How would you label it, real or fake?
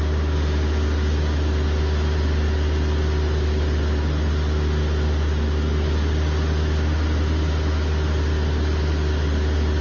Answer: real